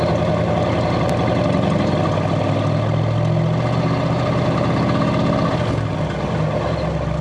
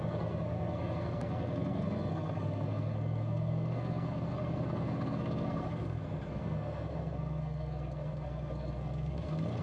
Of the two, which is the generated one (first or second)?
second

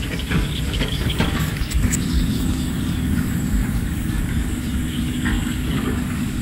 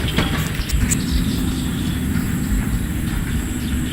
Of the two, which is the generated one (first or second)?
first